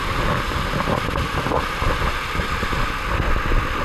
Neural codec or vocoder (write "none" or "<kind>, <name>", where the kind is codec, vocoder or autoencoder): none